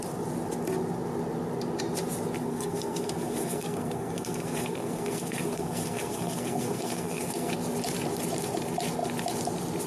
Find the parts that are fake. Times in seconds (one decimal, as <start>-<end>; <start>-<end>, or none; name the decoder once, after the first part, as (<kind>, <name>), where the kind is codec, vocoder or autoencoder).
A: 2.4-7.5 (codec, SNAC)